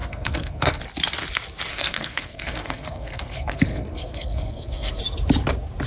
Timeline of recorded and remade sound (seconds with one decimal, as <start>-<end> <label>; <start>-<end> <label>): 0.0-0.8 remade; 0.8-1.7 recorded; 1.7-5.0 remade; 5.0-5.9 recorded